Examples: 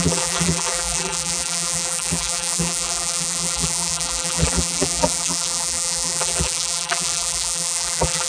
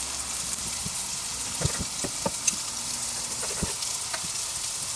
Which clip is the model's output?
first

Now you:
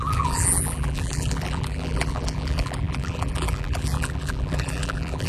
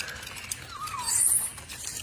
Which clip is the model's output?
first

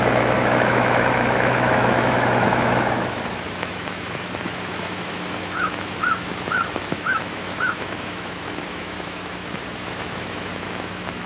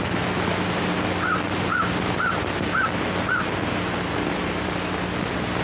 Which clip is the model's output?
first